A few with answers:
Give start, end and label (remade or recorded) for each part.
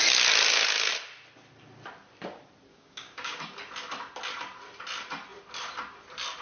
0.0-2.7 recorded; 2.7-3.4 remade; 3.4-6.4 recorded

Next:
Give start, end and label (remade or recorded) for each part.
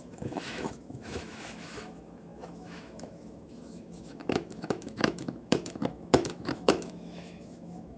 0.0-8.0 remade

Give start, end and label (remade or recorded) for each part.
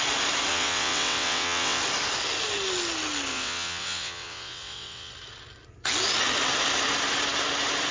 0.0-0.5 recorded; 0.5-1.8 remade; 1.8-3.3 recorded; 3.3-5.1 remade; 5.1-7.9 recorded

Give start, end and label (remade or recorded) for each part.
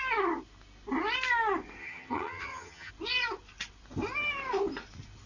0.0-1.8 recorded; 1.8-2.9 remade; 2.9-5.3 recorded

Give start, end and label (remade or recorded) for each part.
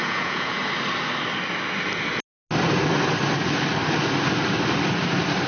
0.0-0.6 remade; 0.6-5.5 recorded